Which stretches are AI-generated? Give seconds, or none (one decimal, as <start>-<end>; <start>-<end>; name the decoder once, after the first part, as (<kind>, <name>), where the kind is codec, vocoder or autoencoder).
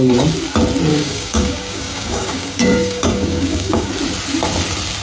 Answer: 0.9-3.9 (codec, DAC)